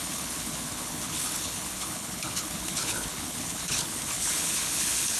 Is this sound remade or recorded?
remade